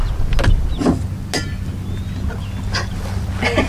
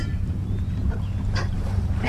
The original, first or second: first